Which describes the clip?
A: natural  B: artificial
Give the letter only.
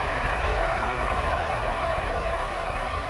B